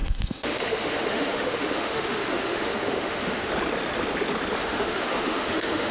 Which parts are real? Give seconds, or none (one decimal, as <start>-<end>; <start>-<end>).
3.5-4.6

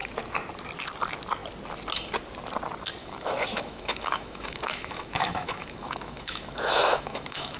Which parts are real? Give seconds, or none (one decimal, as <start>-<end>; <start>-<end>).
0.0-3.0

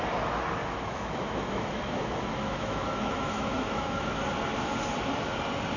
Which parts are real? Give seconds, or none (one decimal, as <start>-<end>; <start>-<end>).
0.0-0.6; 4.1-5.8

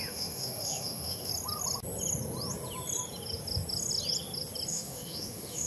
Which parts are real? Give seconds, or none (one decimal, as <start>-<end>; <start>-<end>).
1.3-4.7

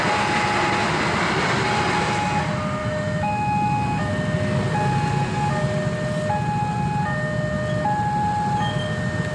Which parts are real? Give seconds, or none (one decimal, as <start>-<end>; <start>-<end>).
0.0-2.8; 4.1-9.3